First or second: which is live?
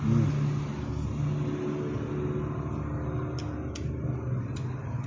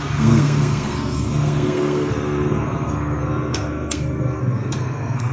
first